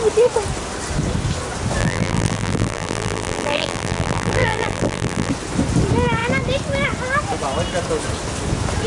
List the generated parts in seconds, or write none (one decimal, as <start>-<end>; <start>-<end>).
1.8-5.3